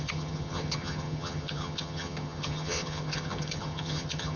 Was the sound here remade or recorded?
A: remade